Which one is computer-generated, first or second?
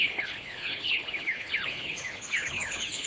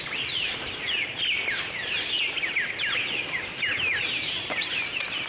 first